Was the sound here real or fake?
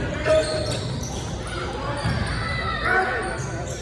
real